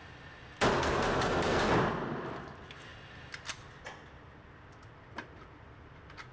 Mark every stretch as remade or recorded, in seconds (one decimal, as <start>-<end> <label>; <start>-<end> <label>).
0.0-0.7 recorded; 0.7-1.7 remade; 1.7-6.3 recorded